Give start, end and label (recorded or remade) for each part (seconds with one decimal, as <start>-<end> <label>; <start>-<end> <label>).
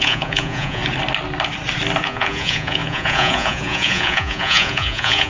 0.0-0.8 remade; 0.8-2.0 recorded; 2.0-5.3 remade